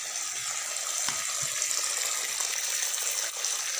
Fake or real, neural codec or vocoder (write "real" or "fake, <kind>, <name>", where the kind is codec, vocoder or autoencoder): real